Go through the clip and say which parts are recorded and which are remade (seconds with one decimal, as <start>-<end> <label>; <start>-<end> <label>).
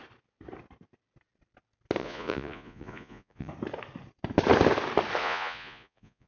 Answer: 0.0-2.0 recorded; 2.0-3.5 remade; 3.5-5.2 recorded; 5.2-6.3 remade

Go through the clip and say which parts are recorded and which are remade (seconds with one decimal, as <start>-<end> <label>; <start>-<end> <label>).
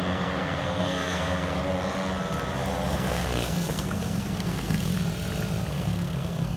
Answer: 0.0-1.6 remade; 1.6-2.9 recorded; 2.9-4.9 remade; 4.9-5.7 recorded; 5.7-6.6 remade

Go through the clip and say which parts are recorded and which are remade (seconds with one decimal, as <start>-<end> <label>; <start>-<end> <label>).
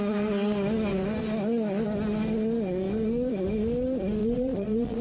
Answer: 0.0-4.2 recorded; 4.2-5.0 remade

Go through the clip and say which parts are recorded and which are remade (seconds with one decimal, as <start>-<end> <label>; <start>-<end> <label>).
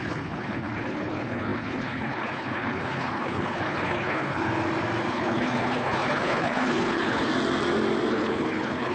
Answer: 0.0-4.5 remade; 4.5-5.1 recorded; 5.1-7.3 remade; 7.3-8.1 recorded; 8.1-8.9 remade